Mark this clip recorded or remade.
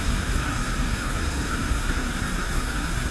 remade